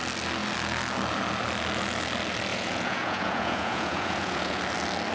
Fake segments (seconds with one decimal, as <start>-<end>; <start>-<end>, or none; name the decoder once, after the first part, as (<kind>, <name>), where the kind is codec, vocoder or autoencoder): 2.5-4.6 (vocoder, Vocos)